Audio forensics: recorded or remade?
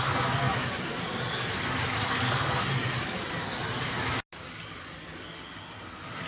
recorded